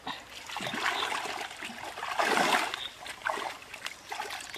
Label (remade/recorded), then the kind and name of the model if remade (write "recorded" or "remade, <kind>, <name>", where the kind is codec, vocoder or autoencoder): recorded